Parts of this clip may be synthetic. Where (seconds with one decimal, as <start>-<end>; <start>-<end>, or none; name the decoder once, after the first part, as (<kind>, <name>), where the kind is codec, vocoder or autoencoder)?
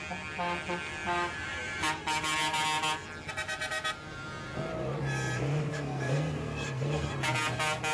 5.7-7.1 (codec, SNAC)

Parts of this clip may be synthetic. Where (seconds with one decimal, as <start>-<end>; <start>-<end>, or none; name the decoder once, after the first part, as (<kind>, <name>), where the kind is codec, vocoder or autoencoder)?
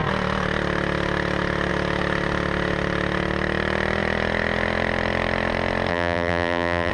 5.9-6.9 (vocoder, BigVGAN v2)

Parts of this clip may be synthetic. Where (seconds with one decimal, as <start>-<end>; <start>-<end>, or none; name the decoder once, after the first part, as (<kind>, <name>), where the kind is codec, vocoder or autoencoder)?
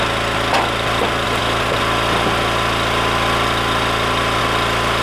none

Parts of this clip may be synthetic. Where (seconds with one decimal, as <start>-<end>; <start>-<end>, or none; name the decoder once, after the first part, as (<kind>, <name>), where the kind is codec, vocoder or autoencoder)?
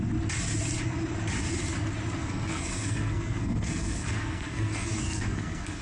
2.2-5.8 (codec, SNAC)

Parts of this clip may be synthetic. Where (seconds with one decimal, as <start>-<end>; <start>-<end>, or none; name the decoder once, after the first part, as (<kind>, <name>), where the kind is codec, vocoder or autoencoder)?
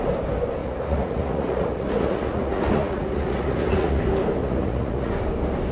0.6-4.0 (vocoder, Vocos); 4.4-5.1